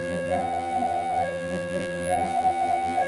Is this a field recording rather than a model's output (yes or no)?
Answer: no